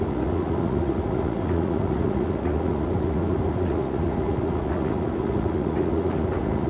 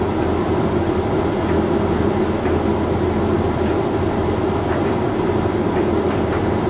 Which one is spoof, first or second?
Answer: first